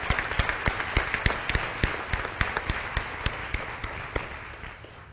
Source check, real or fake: real